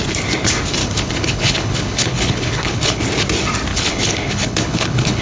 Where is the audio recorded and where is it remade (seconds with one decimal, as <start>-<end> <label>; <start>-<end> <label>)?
0.0-0.8 recorded; 0.8-3.0 remade; 3.0-3.7 recorded; 3.7-5.2 remade